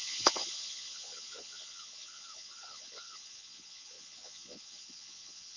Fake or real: fake